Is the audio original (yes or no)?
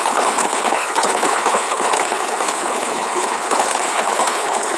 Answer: no